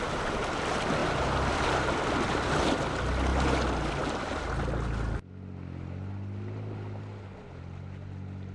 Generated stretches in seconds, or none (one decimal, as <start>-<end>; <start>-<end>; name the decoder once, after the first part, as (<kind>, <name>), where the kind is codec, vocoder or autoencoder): 1.0-1.7 (vocoder, BigVGAN v2)